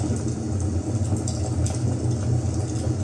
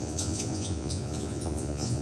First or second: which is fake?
second